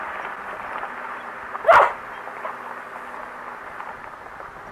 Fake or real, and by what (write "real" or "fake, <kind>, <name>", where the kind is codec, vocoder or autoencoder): real